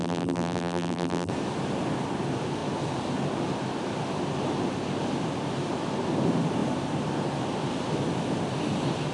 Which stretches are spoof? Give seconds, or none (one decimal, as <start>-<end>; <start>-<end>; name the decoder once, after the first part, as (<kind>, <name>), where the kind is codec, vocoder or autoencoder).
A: 0.0-1.3 (vocoder, BigVGAN v2)